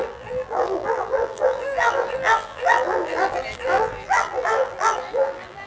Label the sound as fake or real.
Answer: fake